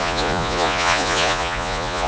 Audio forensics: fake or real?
fake